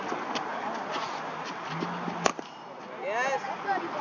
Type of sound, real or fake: real